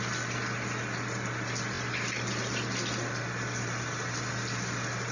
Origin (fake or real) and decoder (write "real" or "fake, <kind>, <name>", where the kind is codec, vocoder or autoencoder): real